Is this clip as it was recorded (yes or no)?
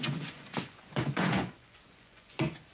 no